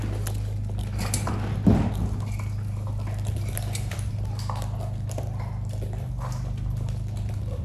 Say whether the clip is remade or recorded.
recorded